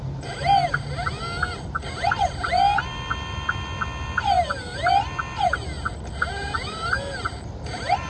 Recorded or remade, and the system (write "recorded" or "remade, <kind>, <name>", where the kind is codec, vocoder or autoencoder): recorded